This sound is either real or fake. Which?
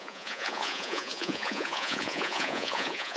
fake